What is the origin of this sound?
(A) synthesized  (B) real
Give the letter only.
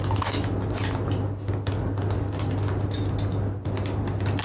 B